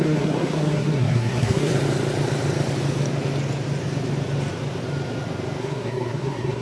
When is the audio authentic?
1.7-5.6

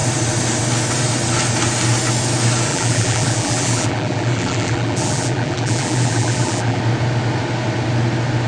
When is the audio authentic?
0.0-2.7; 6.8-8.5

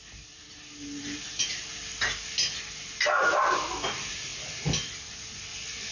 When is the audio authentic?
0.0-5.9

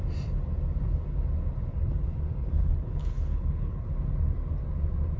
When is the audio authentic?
0.0-2.4; 3.9-5.2

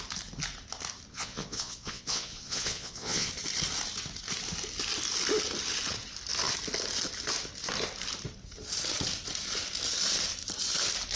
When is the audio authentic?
0.0-1.1; 3.3-11.2

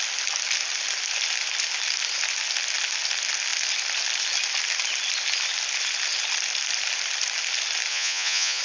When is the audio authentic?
0.0-7.9